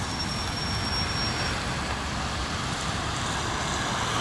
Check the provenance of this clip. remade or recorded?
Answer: recorded